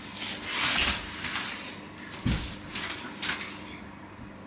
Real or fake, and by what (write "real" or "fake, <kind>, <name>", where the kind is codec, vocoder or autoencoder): real